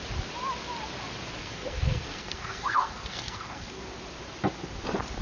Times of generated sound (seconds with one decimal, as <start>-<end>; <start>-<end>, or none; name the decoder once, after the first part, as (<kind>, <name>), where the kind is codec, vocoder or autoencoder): 1.4-3.8 (codec, SNAC)